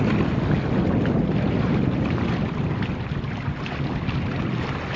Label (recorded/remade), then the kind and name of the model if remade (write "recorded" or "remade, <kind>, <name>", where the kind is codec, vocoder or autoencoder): recorded